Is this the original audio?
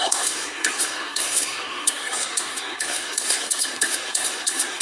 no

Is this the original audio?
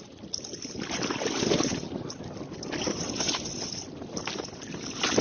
yes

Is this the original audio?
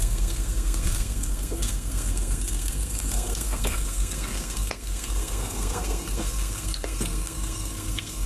no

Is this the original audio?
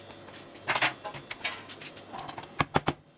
yes